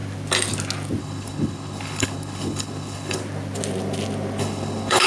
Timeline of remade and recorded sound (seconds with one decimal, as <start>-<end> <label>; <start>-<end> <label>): 0.0-1.0 recorded; 1.0-3.2 remade; 3.2-4.4 recorded; 4.4-5.1 remade